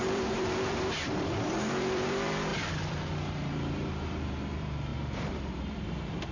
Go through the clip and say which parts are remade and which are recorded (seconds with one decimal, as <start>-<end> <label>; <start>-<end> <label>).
0.0-6.3 remade